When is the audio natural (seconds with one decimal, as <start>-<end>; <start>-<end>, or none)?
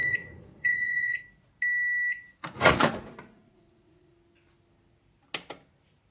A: 1.2-2.3; 4.1-6.1